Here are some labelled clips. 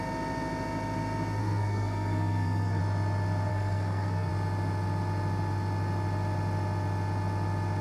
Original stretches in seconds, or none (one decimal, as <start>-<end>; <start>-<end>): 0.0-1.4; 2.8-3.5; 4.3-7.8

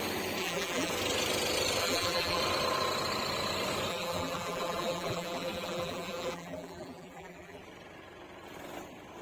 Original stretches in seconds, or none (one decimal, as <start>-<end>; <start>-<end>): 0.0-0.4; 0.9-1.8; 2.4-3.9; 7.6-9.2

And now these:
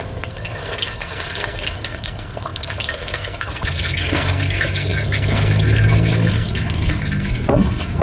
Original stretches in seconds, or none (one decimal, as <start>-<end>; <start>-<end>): none

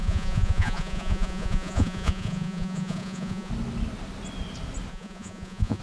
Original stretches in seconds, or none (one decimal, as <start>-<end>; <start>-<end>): 3.5-4.9

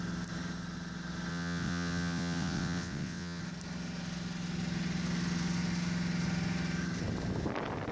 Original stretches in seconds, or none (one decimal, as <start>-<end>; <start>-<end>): 0.0-1.3; 3.4-7.9

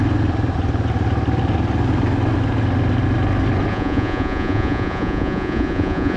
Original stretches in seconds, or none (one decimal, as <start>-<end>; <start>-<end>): 0.0-3.7